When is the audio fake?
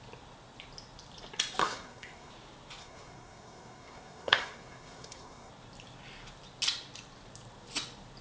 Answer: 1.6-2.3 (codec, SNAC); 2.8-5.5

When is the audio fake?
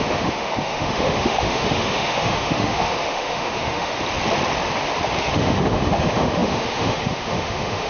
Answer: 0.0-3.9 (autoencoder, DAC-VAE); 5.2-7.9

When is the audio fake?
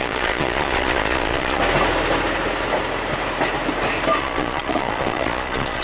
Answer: 0.0-1.6 (vocoder, Vocos); 4.2-5.8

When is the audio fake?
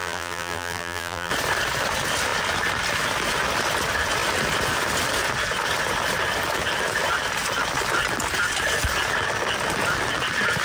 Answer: 0.0-1.3 (vocoder, BigVGAN v2)